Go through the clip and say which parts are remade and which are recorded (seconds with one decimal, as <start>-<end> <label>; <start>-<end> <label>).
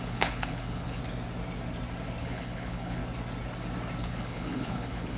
0.0-1.0 remade; 1.0-2.2 recorded; 2.2-3.0 remade; 3.0-4.0 recorded; 4.0-5.2 remade